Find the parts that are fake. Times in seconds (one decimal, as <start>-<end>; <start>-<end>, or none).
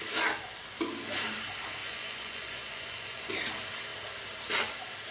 1.8-3.3